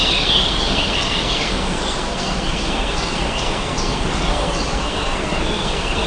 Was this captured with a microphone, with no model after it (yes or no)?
no